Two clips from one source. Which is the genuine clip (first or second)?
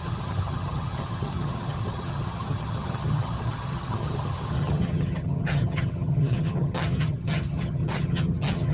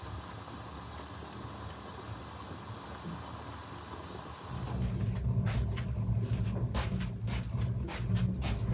second